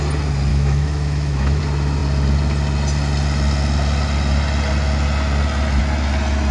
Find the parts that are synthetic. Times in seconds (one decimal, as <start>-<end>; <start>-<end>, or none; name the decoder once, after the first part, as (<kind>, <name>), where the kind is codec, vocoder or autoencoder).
0.5-1.6 (autoencoder, DAC-VAE)